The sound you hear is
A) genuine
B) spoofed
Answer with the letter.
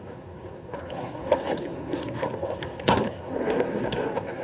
B